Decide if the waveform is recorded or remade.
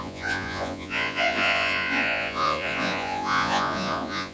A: remade